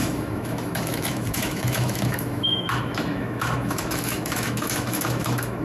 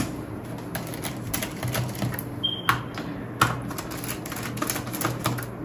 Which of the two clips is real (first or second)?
second